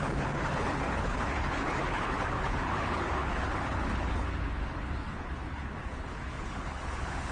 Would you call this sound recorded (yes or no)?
no